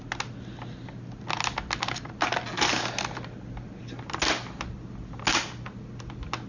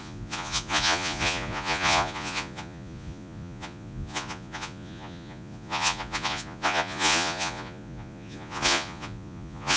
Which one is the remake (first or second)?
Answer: second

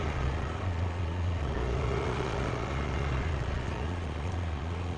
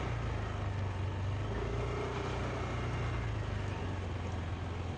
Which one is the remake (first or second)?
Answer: first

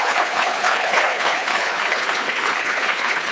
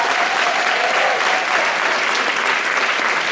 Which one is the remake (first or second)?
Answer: first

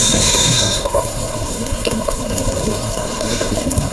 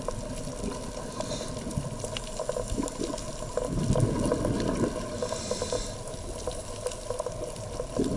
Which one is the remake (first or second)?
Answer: first